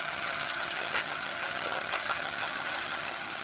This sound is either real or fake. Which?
fake